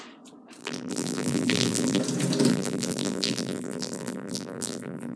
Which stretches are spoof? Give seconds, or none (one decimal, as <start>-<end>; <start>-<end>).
0.6-2.0; 2.5-5.2